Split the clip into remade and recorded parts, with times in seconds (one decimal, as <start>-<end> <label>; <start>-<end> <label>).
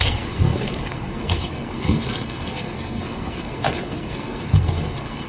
0.0-5.3 remade